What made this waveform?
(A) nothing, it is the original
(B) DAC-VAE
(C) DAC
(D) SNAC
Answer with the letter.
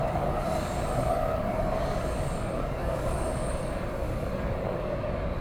C